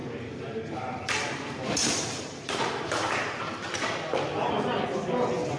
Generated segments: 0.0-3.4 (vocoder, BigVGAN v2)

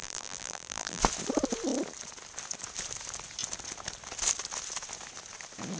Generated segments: 0.0-1.0 (vocoder, BigVGAN v2)